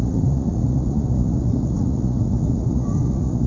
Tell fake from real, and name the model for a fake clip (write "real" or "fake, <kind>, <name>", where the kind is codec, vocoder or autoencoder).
fake, vocoder, Vocos